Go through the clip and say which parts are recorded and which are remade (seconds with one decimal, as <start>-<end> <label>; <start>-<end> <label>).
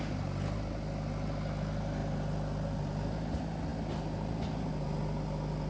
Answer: 0.0-5.7 recorded